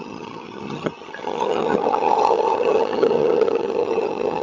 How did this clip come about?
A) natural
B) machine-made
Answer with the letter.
B